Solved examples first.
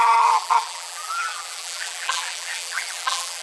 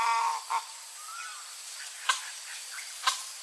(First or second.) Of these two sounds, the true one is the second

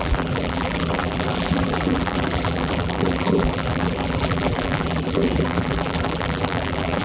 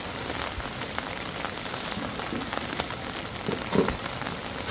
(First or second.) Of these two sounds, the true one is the second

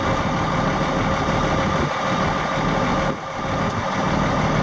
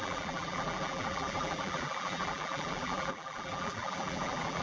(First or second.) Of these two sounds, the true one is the first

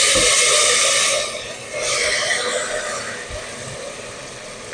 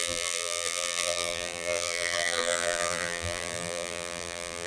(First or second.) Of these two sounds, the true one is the first